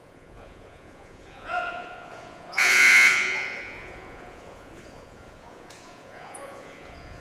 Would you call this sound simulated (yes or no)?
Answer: yes